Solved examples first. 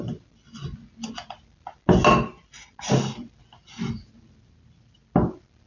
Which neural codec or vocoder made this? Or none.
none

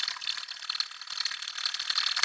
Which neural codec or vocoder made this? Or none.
none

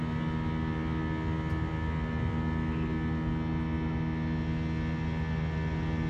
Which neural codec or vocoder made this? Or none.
none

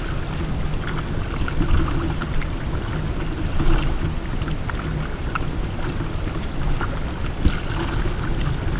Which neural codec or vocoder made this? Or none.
none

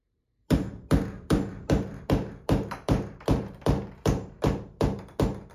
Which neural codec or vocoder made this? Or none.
vocoder, BigVGAN v2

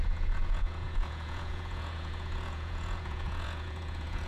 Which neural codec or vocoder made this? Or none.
vocoder, Vocos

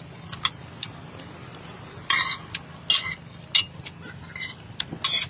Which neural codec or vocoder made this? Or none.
none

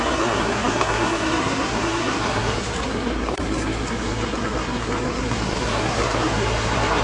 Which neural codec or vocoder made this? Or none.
codec, SNAC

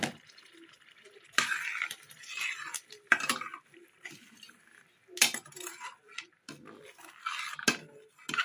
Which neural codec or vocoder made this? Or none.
none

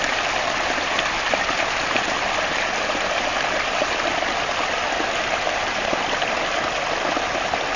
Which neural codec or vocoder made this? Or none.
none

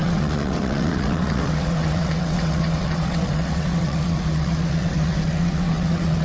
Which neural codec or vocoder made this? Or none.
vocoder, WaveNeXt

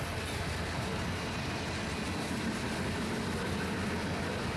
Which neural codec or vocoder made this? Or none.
none